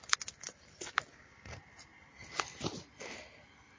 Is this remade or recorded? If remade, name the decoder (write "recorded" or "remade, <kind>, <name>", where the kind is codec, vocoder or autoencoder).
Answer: recorded